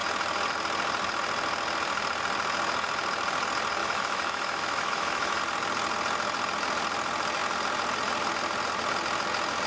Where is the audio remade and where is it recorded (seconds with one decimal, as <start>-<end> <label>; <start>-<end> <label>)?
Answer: 0.0-3.8 recorded; 3.8-5.4 remade; 5.4-9.7 recorded